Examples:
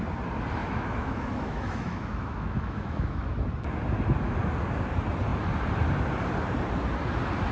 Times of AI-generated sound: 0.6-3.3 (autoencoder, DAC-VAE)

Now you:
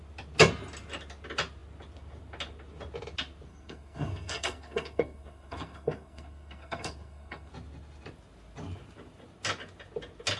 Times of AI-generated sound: 3.5-7.5 (codec, SNAC)

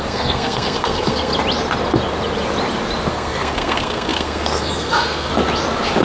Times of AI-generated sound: 0.0-1.3 (codec, SNAC); 3.1-5.3

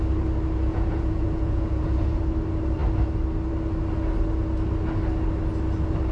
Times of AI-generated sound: 0.7-2.2 (vocoder, Vocos)

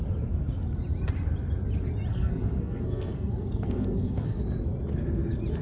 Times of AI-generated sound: 2.1-4.4 (codec, SNAC)

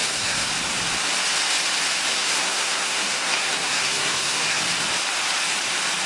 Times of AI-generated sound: 0.0-0.5 (codec, SNAC); 2.1-4.6

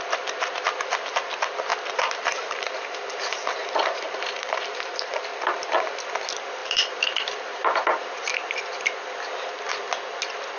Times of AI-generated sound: 1.7-5.2 (vocoder, BigVGAN v2); 6.6-8.6